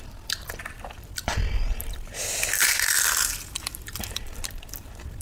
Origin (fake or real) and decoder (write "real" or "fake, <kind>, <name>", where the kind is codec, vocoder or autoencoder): fake, vocoder, BigVGAN v2